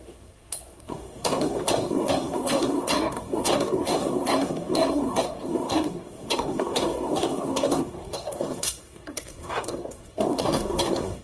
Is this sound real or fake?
fake